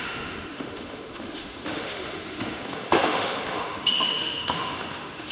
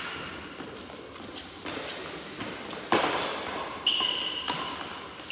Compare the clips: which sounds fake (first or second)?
first